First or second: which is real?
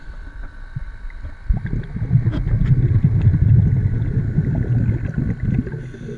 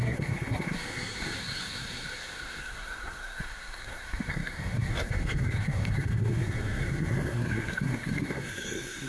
first